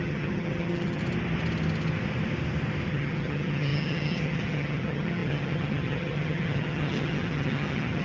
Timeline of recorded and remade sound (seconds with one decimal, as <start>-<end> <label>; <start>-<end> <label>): 0.0-1.0 remade; 1.0-2.9 recorded; 2.9-8.0 remade